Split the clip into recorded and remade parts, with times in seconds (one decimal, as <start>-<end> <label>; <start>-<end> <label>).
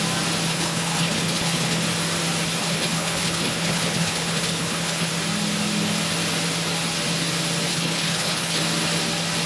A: 0.0-0.5 recorded; 0.5-1.8 remade; 1.8-2.6 recorded; 2.6-5.1 remade; 5.1-7.7 recorded; 7.7-8.6 remade; 8.6-9.5 recorded